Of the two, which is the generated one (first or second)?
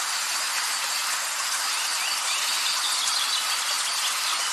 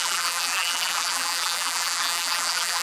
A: second